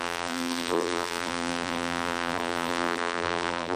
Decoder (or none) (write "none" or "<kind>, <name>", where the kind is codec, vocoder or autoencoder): vocoder, BigVGAN v2